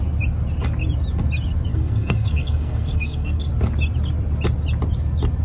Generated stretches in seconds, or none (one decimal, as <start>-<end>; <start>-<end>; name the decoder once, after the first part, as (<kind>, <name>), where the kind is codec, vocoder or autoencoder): 1.7-3.5 (codec, SNAC)